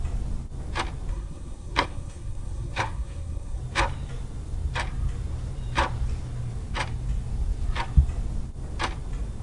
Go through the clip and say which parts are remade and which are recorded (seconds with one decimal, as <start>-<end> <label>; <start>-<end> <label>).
0.0-1.1 recorded; 1.1-3.6 remade; 3.6-9.4 recorded